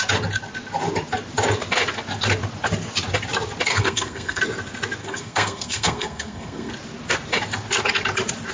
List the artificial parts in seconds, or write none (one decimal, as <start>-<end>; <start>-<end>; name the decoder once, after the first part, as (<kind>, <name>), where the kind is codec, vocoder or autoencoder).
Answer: 3.7-4.4 (codec, SNAC); 5.0-6.7